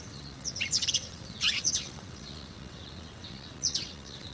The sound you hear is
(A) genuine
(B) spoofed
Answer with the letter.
B